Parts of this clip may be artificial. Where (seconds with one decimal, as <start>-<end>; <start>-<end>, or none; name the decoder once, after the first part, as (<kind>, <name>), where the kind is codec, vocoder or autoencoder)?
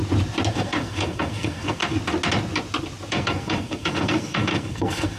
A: 0.5-1.8 (codec, SNAC); 3.1-5.2